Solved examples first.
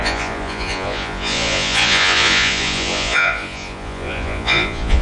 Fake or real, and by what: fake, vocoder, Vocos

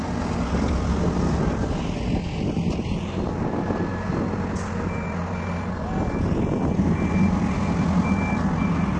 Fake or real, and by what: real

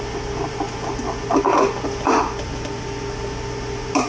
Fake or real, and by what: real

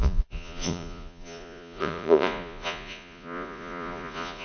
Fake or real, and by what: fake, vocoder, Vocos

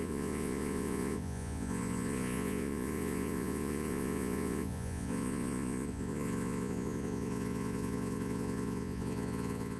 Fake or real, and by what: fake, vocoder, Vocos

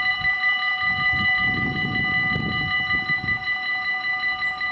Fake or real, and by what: real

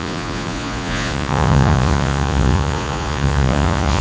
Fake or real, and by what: fake, vocoder, Vocos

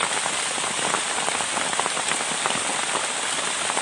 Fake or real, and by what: real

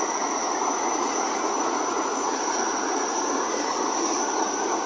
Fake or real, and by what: fake, vocoder, Vocos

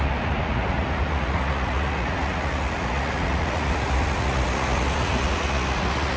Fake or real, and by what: fake, vocoder, Vocos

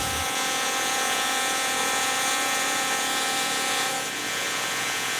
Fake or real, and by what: fake, vocoder, Vocos